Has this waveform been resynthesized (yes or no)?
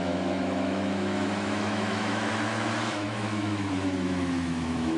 yes